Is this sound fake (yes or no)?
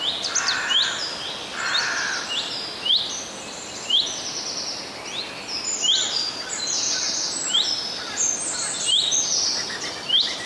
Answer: no